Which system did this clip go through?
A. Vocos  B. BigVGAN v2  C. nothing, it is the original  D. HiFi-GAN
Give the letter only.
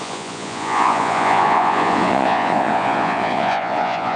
A